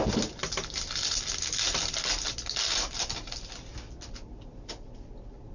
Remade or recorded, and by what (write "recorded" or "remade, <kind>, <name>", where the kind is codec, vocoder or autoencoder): recorded